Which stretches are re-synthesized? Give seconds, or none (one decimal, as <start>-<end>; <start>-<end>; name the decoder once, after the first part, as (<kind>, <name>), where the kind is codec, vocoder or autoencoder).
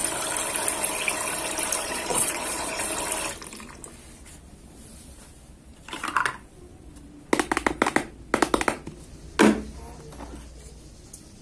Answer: 1.8-2.8 (vocoder, Vocos)